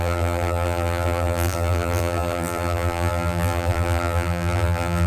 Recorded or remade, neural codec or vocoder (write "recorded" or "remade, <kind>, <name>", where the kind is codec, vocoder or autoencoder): remade, vocoder, BigVGAN v2